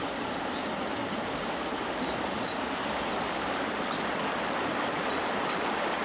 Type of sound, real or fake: fake